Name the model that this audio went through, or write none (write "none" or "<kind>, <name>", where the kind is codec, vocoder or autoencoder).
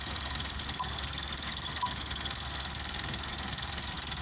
codec, SNAC